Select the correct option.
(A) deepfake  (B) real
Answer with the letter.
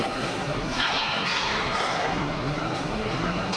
A